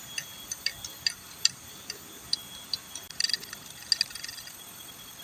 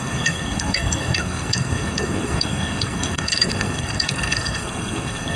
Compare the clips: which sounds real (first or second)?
first